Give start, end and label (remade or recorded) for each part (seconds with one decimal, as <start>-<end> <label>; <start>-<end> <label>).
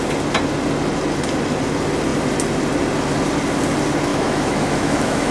0.0-4.1 recorded; 4.1-5.3 remade